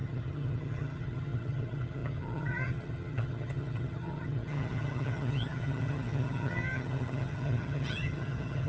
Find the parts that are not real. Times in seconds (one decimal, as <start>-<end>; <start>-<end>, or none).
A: 0.0-8.7